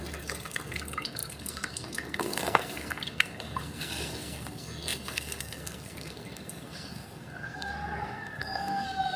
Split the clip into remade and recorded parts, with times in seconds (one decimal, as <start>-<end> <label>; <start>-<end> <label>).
0.0-9.2 remade